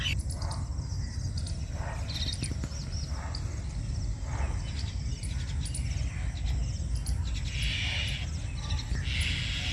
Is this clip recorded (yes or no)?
yes